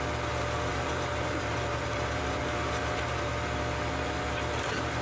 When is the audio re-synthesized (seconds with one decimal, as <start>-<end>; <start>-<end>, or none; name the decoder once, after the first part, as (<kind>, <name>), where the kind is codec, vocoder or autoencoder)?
0.7-2.4 (vocoder, BigVGAN v2)